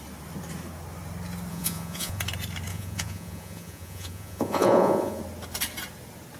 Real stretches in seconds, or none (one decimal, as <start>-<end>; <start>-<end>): 0.0-1.5; 2.2-2.7; 5.2-6.4